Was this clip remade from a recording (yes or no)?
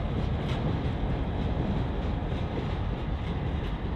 no